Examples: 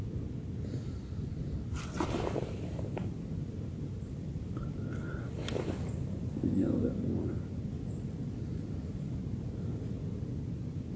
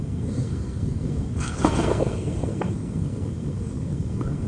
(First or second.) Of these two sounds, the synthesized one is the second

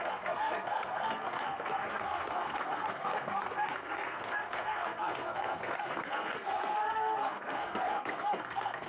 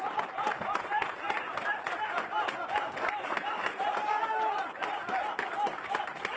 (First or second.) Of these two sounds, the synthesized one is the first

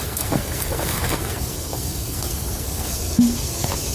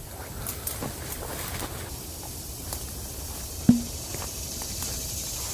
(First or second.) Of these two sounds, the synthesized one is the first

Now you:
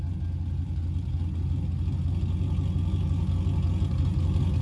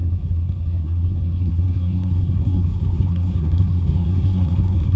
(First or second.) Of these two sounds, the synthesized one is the second